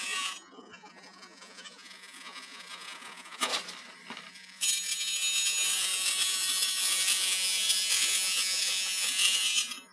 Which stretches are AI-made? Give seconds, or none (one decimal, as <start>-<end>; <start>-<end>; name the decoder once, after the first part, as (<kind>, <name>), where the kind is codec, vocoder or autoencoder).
0.0-3.5 (vocoder, Vocos); 4.3-9.9